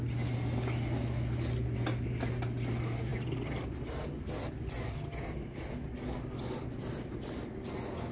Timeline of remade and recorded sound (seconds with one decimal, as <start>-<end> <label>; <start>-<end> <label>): 0.0-8.1 recorded